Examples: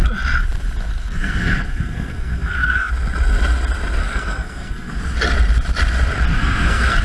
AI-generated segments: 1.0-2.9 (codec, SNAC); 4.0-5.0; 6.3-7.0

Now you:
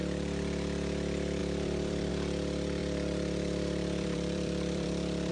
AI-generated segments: 1.4-2.1 (vocoder, BigVGAN v2); 2.8-5.3